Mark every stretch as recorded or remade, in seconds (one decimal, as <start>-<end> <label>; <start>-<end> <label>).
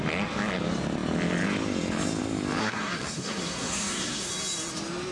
0.0-2.6 recorded; 2.6-4.3 remade; 4.3-5.1 recorded